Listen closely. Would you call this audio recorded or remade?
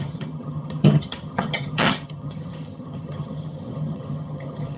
remade